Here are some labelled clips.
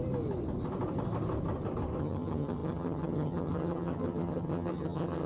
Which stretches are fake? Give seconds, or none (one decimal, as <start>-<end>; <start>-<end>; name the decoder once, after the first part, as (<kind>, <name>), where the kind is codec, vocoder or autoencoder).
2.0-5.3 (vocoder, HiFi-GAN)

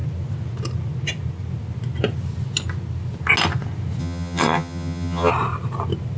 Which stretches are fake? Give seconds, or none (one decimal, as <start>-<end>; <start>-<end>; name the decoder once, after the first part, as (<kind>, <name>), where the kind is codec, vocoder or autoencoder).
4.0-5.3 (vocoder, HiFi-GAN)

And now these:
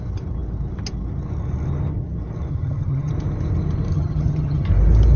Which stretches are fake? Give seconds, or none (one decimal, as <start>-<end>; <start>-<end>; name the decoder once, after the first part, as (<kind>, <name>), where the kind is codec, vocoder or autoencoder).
2.5-3.1 (vocoder, HiFi-GAN); 3.9-4.7

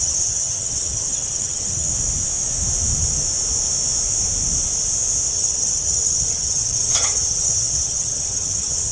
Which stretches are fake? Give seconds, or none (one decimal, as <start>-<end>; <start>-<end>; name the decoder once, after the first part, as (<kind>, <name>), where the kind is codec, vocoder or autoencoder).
0.0-1.9 (vocoder, HiFi-GAN); 5.3-8.9

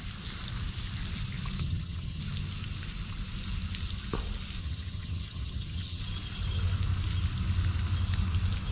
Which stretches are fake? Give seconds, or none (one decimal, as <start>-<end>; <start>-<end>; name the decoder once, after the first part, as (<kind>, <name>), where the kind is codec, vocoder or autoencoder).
1.6-2.2 (vocoder, HiFi-GAN); 4.6-6.0

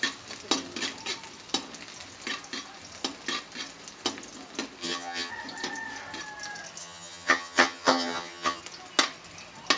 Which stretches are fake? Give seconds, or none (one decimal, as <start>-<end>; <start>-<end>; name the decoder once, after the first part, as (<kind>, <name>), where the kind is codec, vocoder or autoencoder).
4.8-5.3 (vocoder, HiFi-GAN); 6.8-8.6

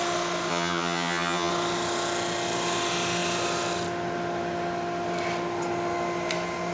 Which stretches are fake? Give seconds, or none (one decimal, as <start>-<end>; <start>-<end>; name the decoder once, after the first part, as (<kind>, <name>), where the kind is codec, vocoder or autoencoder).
0.5-1.5 (vocoder, HiFi-GAN)